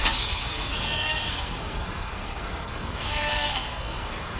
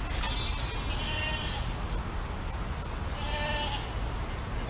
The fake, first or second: first